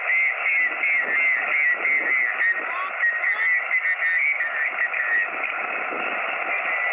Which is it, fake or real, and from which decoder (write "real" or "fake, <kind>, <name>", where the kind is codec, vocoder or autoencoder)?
real